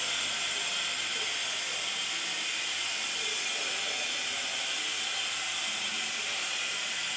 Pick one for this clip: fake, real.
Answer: real